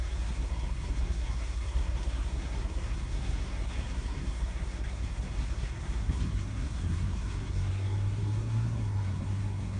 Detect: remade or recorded remade